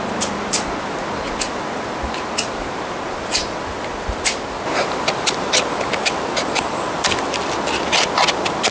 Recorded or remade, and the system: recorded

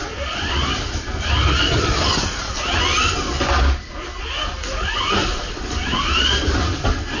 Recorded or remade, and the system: recorded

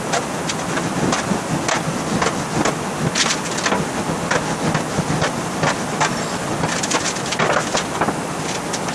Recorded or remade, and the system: recorded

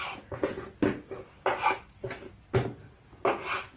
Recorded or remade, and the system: recorded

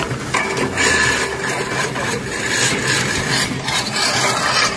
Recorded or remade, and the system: recorded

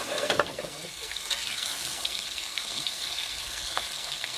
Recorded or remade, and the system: remade, codec, SNAC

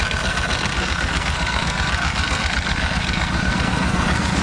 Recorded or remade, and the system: remade, codec, SNAC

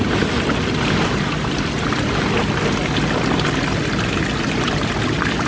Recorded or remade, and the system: recorded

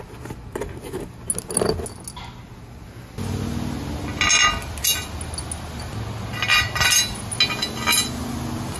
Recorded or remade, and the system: recorded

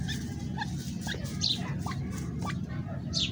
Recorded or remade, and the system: recorded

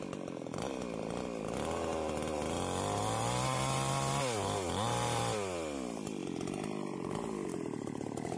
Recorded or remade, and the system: recorded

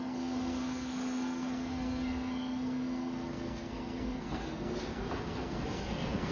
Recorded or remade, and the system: remade, codec, SNAC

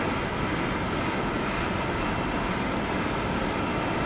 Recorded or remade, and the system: recorded